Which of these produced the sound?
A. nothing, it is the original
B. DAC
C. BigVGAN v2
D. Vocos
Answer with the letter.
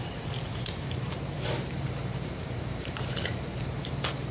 C